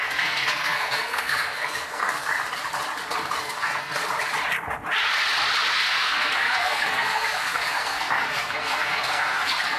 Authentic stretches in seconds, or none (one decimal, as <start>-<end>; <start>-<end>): 2.3-3.4; 4.0-5.7